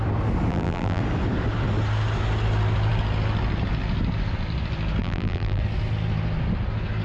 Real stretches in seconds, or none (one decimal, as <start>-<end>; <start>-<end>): 0.0-0.5; 1.0-5.0; 5.6-7.0